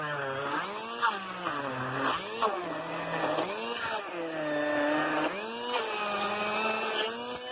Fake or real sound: real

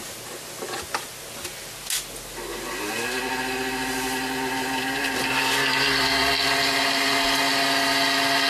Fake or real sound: real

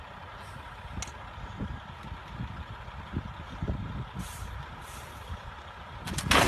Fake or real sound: real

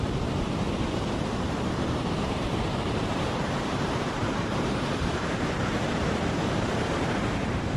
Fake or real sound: fake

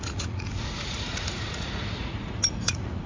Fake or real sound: fake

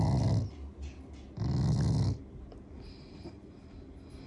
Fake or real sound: real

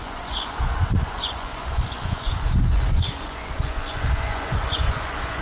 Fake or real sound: fake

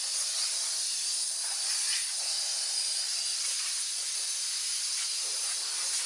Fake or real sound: real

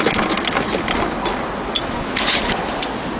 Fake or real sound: real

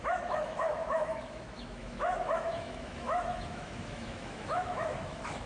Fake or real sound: fake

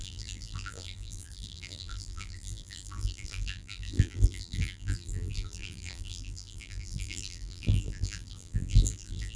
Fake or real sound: fake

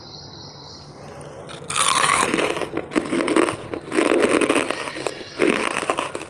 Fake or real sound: real